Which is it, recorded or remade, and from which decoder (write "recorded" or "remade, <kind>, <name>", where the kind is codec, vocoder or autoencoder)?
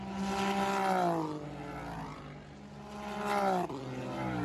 recorded